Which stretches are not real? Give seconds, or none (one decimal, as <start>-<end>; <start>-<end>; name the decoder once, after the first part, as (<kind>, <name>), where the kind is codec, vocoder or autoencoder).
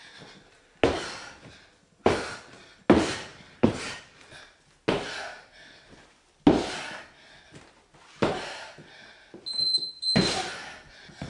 3.3-4.0 (vocoder, BigVGAN v2)